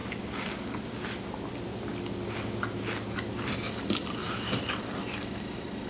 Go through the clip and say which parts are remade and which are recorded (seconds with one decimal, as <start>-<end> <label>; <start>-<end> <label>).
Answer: 0.0-4.2 recorded; 4.2-4.9 remade; 4.9-5.9 recorded